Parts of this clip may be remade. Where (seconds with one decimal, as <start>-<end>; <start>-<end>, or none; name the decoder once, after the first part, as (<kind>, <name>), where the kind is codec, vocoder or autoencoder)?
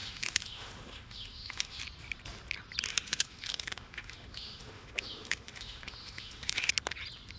0.0-1.8 (autoencoder, DAC-VAE); 2.9-6.7